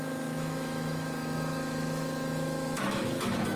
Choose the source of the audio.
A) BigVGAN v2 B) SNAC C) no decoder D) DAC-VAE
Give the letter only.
D